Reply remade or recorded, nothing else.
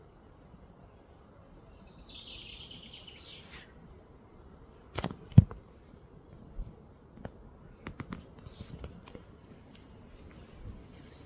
recorded